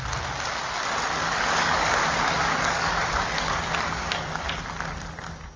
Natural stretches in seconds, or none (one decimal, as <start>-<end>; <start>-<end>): 0.0-1.2; 4.6-5.6